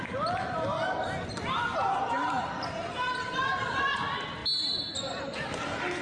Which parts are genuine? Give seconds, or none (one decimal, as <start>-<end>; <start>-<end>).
0.0-6.0